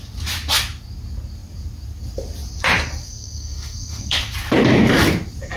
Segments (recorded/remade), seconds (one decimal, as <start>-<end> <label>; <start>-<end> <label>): 0.0-3.0 recorded; 3.0-4.2 remade; 4.2-5.6 recorded